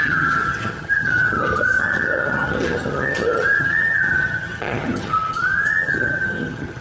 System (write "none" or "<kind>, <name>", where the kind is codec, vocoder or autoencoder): vocoder, HiFi-GAN